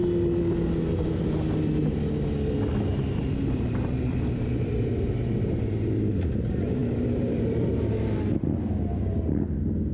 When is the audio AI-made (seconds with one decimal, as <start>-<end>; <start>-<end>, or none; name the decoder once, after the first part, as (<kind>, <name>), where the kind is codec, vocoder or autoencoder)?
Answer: 2.9-5.7 (vocoder, BigVGAN v2); 6.8-9.5